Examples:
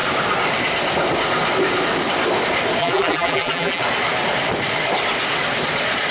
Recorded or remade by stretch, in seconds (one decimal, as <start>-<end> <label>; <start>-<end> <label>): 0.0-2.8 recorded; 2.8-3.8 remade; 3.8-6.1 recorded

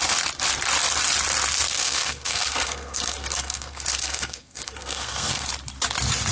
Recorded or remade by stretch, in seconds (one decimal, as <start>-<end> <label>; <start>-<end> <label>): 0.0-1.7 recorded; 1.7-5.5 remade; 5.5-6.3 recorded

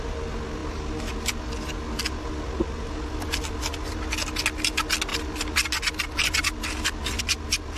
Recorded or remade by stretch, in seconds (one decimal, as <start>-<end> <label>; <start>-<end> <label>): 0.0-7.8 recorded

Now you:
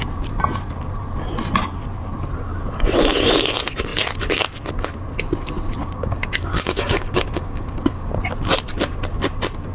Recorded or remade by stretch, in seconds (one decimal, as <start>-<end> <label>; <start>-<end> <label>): 0.0-5.8 recorded; 5.8-8.1 remade; 8.1-9.7 recorded

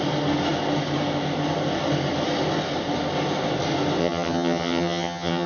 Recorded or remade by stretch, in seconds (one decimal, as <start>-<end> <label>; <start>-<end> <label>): 0.0-4.0 recorded; 4.0-5.5 remade